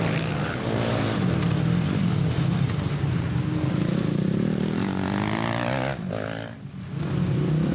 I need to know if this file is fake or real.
real